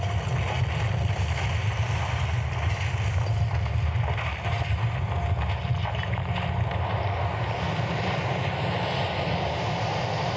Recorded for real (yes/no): yes